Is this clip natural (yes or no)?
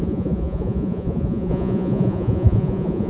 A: no